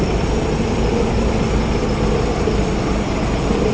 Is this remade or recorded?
recorded